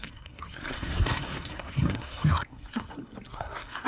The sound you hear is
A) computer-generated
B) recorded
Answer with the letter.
A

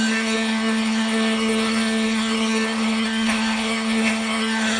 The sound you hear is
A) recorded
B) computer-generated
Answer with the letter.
B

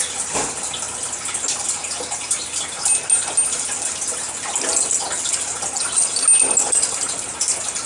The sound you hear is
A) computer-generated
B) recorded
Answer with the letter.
B